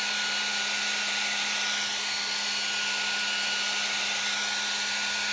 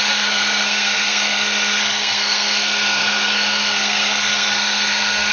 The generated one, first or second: second